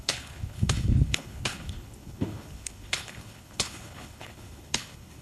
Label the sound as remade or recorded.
remade